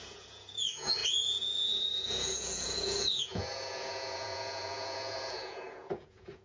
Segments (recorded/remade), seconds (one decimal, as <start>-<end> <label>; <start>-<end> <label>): 0.0-6.4 remade